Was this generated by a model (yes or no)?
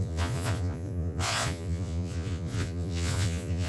yes